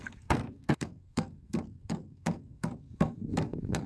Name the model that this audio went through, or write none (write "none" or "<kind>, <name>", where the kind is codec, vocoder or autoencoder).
codec, SNAC